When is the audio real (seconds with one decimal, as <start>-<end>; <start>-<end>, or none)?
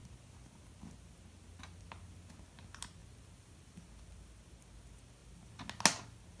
0.0-3.0; 3.8-6.4